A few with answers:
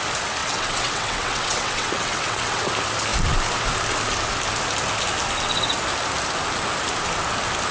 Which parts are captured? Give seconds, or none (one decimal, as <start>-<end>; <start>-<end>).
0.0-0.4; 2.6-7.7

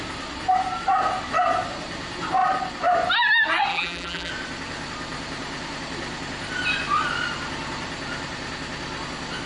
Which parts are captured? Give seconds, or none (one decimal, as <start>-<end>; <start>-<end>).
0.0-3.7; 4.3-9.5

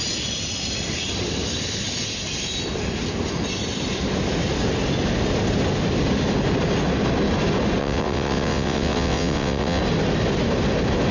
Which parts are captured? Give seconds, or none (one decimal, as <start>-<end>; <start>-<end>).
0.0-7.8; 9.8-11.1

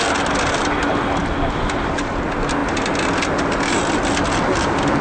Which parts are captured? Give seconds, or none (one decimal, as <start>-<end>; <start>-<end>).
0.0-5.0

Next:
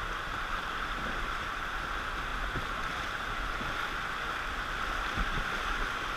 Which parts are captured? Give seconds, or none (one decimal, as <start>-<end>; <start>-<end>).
0.0-6.2

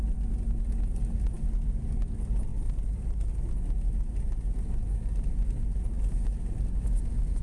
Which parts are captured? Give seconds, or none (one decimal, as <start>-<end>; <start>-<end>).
0.0-2.5; 3.5-7.4

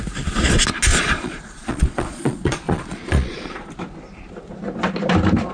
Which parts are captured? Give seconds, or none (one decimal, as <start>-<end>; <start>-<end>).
0.0-0.9; 3.7-5.5